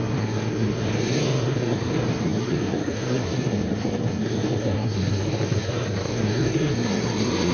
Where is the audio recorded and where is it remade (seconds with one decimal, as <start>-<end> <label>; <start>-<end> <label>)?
0.0-7.5 remade